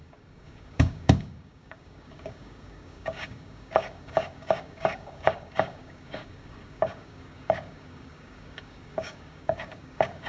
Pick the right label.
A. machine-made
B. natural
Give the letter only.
A